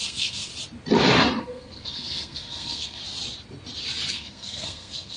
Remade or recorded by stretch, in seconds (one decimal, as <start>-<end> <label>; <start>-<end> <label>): 0.0-0.5 remade; 0.5-1.4 recorded; 1.4-3.0 remade; 3.0-4.1 recorded; 4.1-5.2 remade